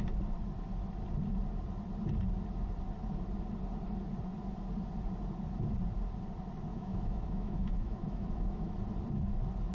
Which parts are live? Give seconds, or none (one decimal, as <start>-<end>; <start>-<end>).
0.0-6.7; 8.7-9.7